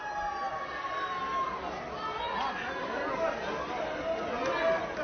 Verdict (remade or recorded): recorded